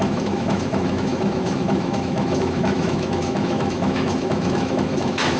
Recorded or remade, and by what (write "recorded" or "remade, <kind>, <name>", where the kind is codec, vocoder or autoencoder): remade, autoencoder, DAC-VAE